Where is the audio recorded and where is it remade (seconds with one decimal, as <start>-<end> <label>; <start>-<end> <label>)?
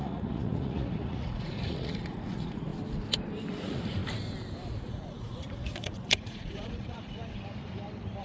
0.0-2.7 remade; 2.7-3.5 recorded; 3.5-4.0 remade; 4.0-4.9 recorded; 4.9-7.2 remade; 7.2-8.2 recorded